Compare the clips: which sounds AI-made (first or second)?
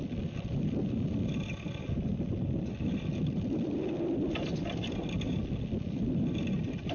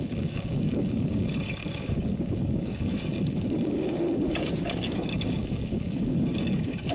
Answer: second